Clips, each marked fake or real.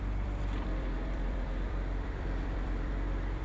fake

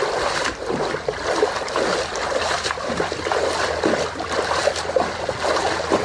real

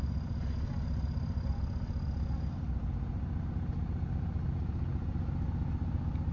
real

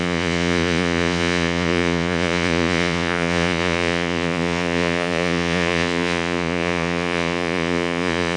fake